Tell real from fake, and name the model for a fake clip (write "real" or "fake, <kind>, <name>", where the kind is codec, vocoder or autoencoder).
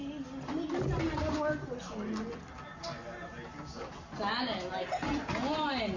real